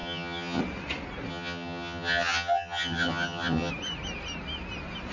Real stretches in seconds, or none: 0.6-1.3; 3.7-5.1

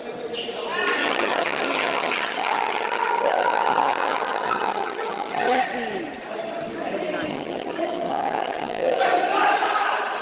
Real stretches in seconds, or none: 0.0-1.0; 5.6-7.3; 9.0-10.2

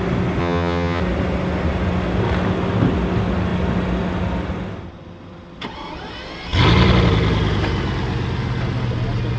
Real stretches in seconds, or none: 0.0-0.4; 1.0-9.4

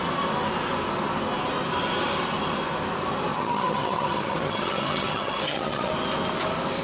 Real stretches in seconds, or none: 0.0-3.3; 5.9-6.8

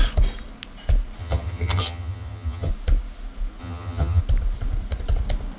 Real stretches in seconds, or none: 0.0-1.2; 2.7-3.6; 4.2-5.6